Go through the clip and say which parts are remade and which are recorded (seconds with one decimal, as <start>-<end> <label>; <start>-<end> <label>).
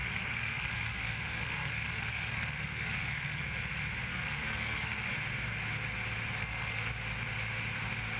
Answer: 0.0-3.6 remade; 3.6-4.1 recorded; 4.1-5.1 remade; 5.1-6.4 recorded; 6.4-6.9 remade; 6.9-8.2 recorded